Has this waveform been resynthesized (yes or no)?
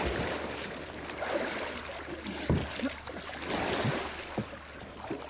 no